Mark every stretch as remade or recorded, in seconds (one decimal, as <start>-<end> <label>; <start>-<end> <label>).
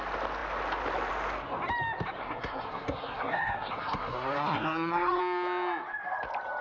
0.0-2.2 recorded; 2.2-5.2 remade; 5.2-6.6 recorded